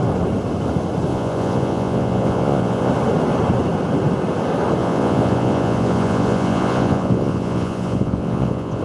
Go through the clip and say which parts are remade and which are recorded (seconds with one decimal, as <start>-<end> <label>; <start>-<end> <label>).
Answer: 0.0-1.1 recorded; 1.1-2.9 remade; 2.9-4.8 recorded; 4.8-8.8 remade